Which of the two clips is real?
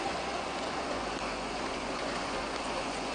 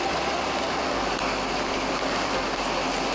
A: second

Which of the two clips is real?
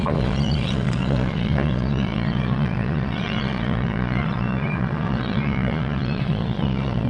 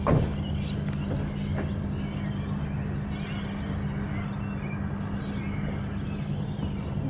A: second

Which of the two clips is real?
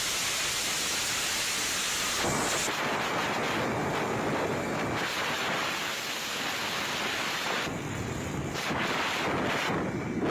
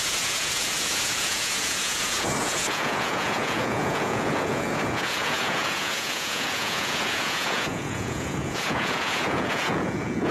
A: first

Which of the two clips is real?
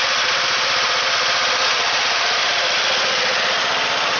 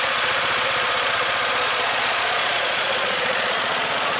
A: first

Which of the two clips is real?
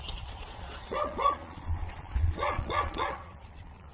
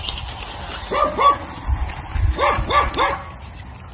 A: second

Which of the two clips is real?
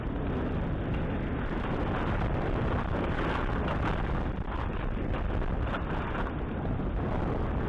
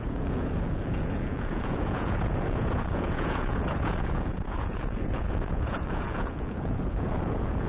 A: first